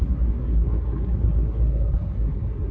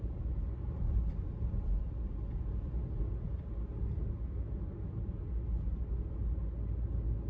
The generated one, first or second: first